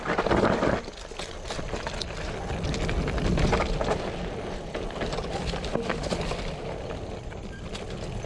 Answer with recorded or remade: recorded